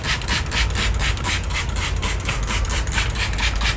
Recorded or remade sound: recorded